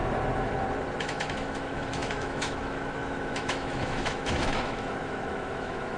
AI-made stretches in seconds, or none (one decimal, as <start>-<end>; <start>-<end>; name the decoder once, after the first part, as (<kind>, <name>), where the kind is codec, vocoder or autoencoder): 1.0-6.0 (autoencoder, DAC-VAE)